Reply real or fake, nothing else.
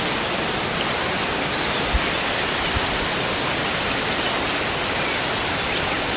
real